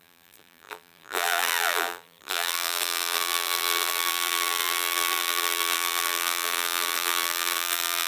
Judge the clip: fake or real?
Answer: fake